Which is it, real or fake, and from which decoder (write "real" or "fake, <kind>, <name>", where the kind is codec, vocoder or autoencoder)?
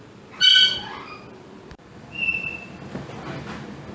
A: real